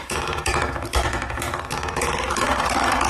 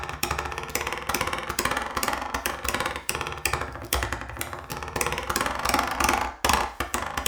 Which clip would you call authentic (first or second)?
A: second